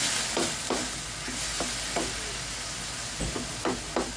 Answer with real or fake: real